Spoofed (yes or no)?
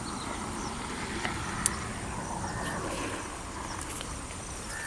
no